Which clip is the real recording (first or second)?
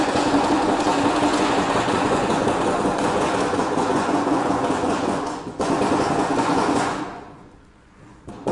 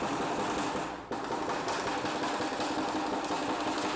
second